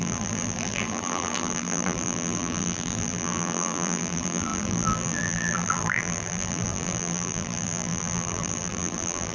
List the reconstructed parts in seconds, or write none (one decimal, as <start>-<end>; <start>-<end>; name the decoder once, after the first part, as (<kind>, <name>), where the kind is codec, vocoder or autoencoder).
0.0-9.3 (vocoder, BigVGAN v2)